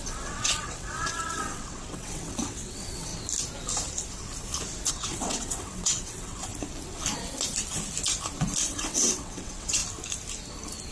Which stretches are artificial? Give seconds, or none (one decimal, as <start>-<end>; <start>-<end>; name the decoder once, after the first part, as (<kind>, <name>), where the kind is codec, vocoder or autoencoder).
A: 0.0-3.1 (vocoder, WaveNeXt); 4.9-6.5; 8.7-9.8